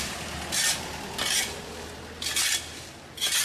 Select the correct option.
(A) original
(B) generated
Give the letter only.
A